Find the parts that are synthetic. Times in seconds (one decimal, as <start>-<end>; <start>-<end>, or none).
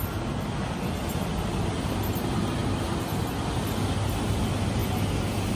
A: none